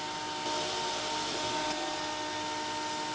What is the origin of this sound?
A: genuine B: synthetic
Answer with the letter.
A